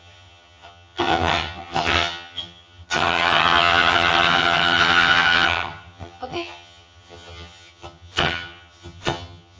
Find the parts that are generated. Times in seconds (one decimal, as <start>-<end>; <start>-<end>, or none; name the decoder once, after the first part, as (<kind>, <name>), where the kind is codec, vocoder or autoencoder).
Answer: 0.0-9.6 (vocoder, HiFi-GAN)